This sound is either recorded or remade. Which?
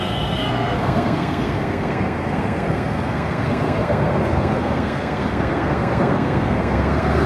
remade